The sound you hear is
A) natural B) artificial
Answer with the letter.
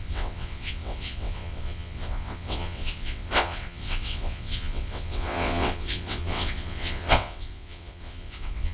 B